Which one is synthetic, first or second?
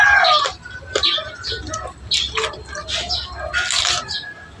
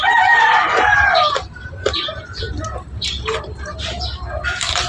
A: second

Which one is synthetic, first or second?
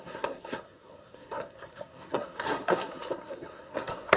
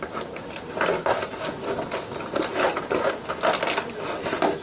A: first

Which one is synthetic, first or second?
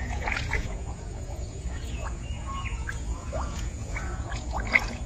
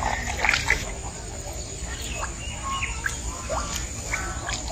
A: first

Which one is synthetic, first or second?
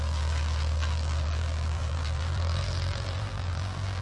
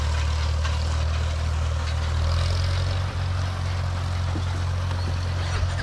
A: first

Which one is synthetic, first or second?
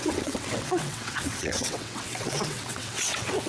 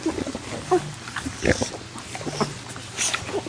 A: first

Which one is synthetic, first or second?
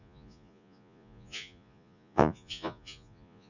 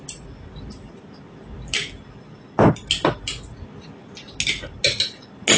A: first